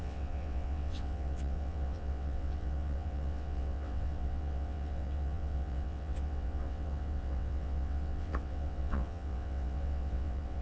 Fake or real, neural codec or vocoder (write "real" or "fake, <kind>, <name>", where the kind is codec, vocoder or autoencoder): fake, vocoder, WaveNeXt